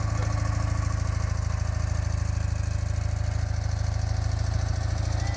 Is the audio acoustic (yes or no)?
yes